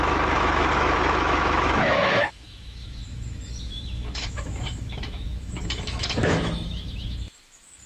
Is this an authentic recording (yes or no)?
no